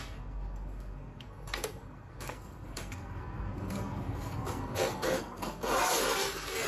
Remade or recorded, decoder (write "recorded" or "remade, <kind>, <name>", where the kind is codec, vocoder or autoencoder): remade, codec, SNAC